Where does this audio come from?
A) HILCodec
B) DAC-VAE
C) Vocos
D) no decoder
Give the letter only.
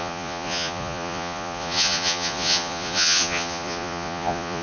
C